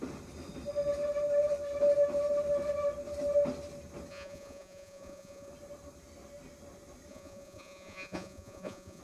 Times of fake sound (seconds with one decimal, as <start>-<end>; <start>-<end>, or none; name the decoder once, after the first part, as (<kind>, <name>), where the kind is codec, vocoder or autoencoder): 4.1-5.5 (vocoder, Vocos); 7.1-9.0